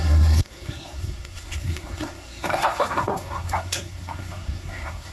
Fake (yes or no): yes